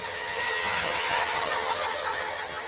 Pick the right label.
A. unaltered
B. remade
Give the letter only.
B